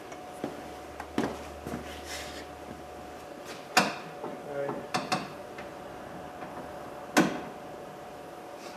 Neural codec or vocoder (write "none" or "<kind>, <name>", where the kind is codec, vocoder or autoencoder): none